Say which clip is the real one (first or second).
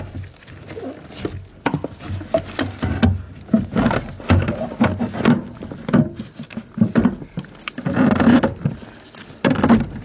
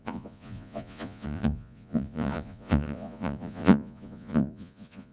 first